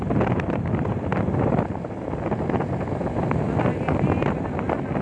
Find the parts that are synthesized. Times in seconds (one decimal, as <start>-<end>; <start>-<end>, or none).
none